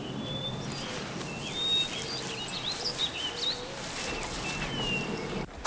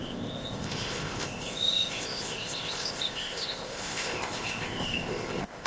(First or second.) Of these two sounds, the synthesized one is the second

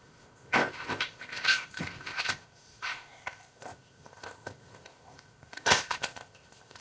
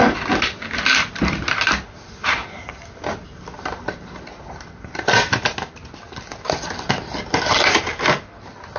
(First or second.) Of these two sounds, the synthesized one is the first